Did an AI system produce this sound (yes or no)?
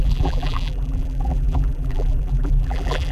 yes